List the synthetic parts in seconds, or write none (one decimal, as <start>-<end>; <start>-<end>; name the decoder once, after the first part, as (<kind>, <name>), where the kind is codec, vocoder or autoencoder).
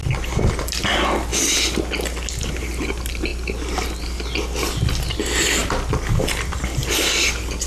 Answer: none